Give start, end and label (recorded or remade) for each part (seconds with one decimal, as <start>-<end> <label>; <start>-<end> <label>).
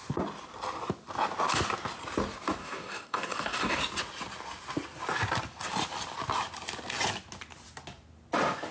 0.0-2.6 recorded; 2.6-3.8 remade; 3.8-8.7 recorded